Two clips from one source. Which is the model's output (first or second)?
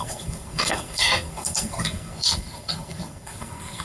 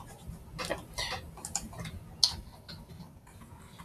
first